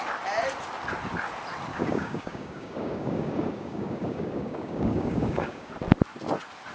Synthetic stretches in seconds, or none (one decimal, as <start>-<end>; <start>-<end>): 1.7-5.7